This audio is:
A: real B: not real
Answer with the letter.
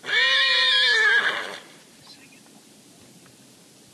A